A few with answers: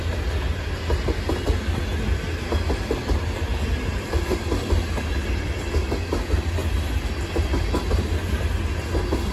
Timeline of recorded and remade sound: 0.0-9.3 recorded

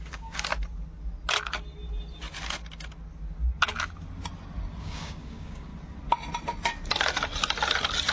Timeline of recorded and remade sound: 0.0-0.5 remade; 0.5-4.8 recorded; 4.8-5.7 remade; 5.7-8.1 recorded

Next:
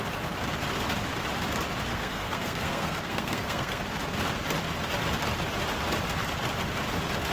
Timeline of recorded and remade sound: 0.0-1.9 recorded; 1.9-3.8 remade; 3.8-7.3 recorded

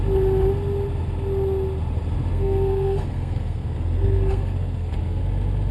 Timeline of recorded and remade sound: 0.0-2.3 recorded; 2.3-5.2 remade; 5.2-5.7 recorded